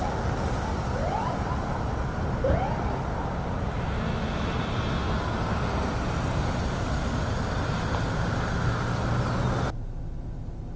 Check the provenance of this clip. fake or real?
real